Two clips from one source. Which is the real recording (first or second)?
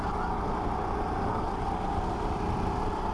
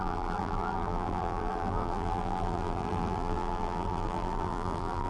first